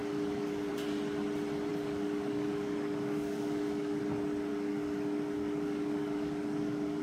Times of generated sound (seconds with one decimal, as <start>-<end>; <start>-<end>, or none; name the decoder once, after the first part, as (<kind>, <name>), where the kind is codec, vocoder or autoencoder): 0.0-0.7 (codec, DAC); 1.7-4.0; 4.5-7.0